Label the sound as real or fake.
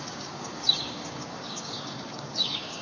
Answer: fake